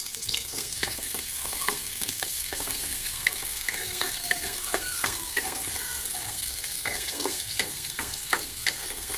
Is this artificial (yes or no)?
yes